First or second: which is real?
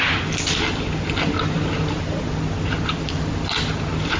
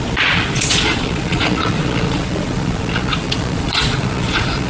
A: first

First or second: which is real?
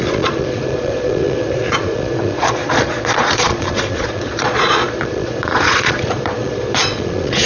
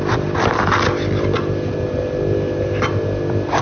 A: second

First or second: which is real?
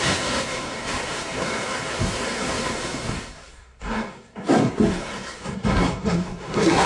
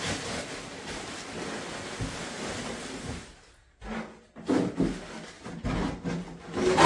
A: second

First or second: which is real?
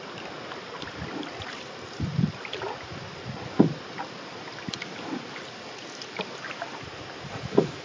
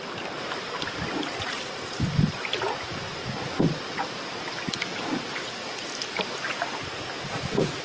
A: second